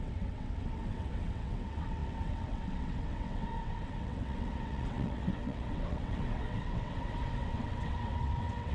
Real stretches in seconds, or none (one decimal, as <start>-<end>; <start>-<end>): none